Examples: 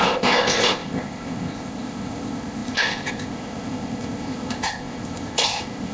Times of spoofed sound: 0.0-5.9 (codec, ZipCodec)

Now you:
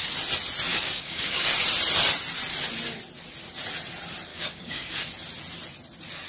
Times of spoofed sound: 0.7-1.5 (codec, DAC); 4.3-4.9